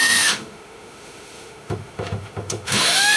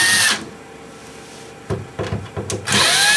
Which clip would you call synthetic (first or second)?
first